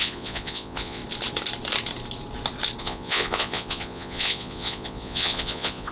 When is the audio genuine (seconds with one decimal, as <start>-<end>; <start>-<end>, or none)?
1.0-2.8